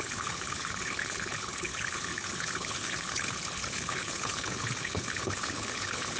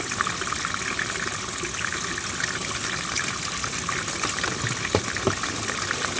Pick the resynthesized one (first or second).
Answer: first